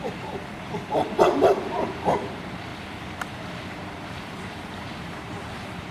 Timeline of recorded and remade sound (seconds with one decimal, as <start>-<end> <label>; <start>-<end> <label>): 0.0-2.7 remade; 2.7-3.6 recorded; 3.6-5.9 remade

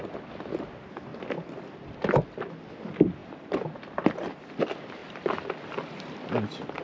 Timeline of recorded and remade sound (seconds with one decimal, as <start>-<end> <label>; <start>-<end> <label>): 0.0-3.2 recorded; 3.2-4.1 remade; 4.1-5.0 recorded; 5.0-6.8 remade